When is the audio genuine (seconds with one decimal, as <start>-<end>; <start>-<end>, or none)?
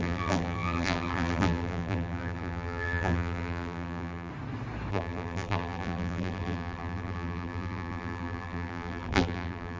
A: 4.3-4.9